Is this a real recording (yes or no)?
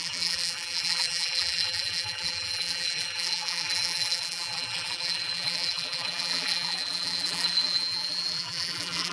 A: no